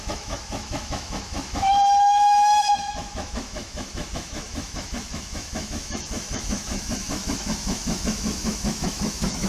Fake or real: fake